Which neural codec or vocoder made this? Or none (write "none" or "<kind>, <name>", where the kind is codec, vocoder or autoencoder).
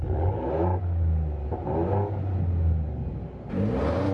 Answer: none